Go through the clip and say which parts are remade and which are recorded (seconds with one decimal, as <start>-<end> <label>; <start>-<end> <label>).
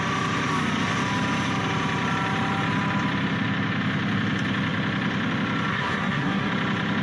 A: 0.0-5.7 recorded; 5.7-6.5 remade; 6.5-7.0 recorded